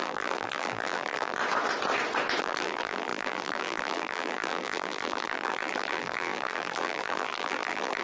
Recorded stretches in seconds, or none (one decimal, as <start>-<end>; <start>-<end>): 1.4-2.4